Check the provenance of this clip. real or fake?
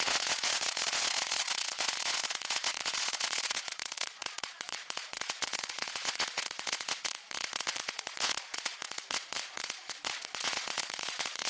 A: fake